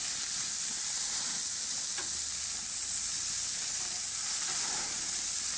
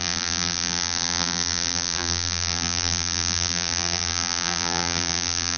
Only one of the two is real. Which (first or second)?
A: first